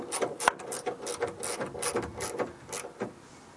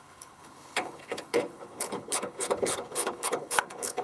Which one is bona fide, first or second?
first